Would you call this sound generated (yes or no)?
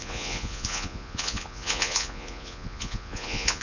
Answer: yes